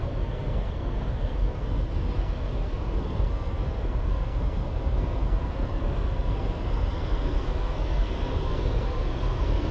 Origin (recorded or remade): remade